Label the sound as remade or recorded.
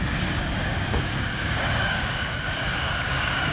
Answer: remade